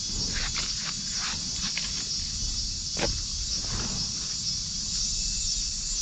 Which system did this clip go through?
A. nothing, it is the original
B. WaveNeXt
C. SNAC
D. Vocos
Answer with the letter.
A